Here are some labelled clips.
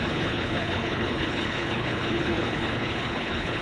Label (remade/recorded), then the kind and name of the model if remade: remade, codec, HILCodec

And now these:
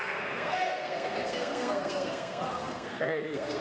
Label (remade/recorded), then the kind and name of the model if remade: remade, codec, SNAC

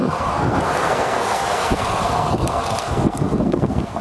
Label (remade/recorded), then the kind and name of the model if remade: remade, codec, SNAC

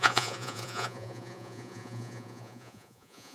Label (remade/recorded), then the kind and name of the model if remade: remade, vocoder, Vocos